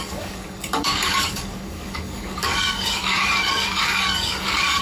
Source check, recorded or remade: remade